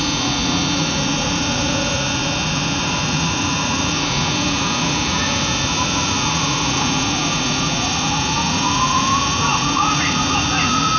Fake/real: fake